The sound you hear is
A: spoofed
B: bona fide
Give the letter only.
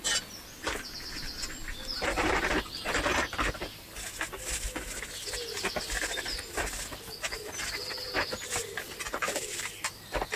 B